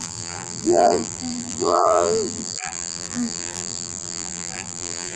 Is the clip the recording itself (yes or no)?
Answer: no